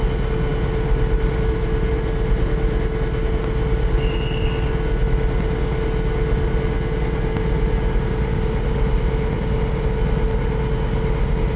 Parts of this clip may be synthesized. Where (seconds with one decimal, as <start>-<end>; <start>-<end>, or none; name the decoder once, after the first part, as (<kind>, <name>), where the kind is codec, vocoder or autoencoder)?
none